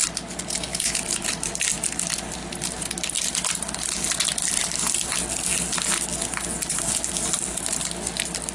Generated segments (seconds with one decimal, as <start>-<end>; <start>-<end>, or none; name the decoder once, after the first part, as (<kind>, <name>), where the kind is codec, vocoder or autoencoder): 0.7-1.5 (autoencoder, DAC-VAE)